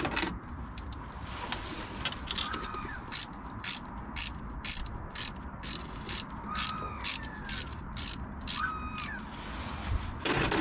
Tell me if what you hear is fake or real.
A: real